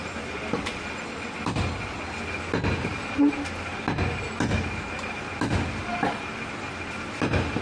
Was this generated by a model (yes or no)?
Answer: no